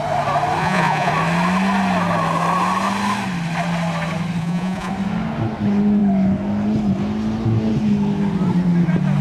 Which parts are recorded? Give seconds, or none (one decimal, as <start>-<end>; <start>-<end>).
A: 0.0-0.6; 1.1-4.4; 4.9-9.2